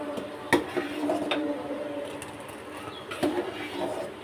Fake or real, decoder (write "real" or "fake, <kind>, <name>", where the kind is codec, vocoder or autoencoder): real